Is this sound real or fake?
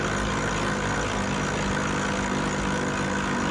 real